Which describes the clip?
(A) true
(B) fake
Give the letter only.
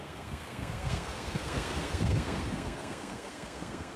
B